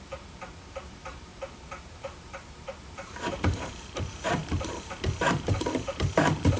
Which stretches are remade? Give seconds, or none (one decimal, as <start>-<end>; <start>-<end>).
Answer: 0.0-1.3; 1.8-6.6

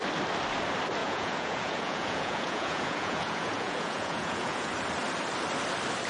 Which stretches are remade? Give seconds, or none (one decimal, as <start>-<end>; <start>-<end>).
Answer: 1.0-4.7

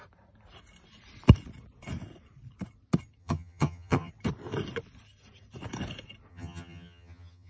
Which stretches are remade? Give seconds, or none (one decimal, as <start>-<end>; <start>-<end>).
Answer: 3.2-4.1; 6.3-7.5

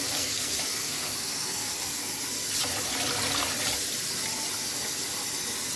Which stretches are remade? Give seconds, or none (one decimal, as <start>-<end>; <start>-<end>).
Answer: 0.0-2.1